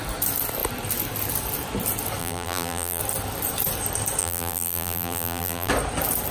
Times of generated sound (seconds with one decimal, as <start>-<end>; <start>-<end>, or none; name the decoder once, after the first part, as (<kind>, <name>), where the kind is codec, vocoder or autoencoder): 2.2-3.0 (vocoder, BigVGAN v2); 4.2-5.7